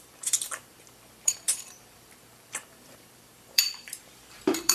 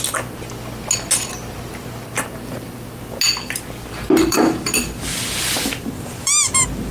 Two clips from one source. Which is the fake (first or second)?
first